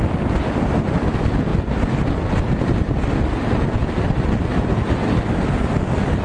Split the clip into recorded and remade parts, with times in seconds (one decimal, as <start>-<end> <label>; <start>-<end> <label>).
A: 0.0-6.2 recorded